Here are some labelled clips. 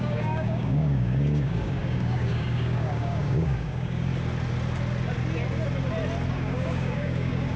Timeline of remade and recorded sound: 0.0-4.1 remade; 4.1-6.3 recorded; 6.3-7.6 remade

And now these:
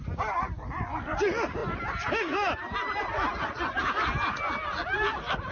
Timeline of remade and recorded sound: 0.0-5.5 recorded

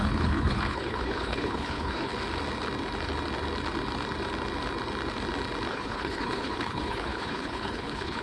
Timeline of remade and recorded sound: 0.0-2.1 remade; 2.1-5.7 recorded; 5.7-8.2 remade